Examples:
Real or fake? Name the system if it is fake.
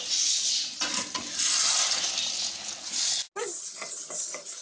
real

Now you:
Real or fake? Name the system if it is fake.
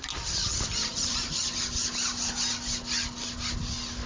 real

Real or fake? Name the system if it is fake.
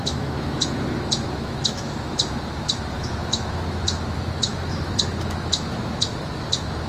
fake, autoencoder, DAC-VAE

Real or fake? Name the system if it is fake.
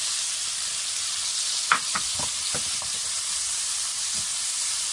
real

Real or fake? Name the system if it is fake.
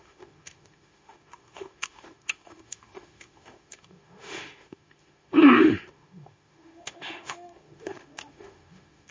fake, autoencoder, DAC-VAE